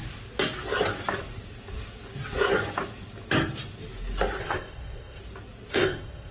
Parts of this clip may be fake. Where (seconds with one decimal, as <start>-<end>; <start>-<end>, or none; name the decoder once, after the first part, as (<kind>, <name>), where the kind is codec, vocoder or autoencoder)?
4.4-5.2 (codec, ZipCodec); 5.7-6.3